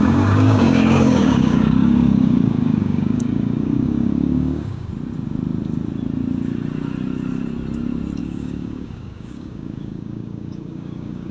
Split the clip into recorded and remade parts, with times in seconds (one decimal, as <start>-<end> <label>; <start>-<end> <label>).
0.0-4.9 remade; 4.9-8.2 recorded; 8.2-11.3 remade